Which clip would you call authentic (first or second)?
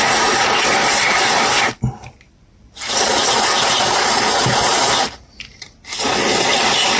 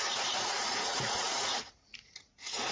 first